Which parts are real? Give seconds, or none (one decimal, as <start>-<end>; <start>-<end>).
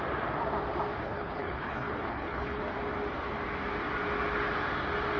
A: 0.0-1.0; 2.6-5.2